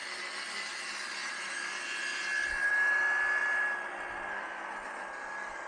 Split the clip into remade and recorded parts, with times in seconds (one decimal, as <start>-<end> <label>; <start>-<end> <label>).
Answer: 0.0-5.7 recorded